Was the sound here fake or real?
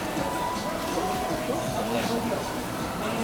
fake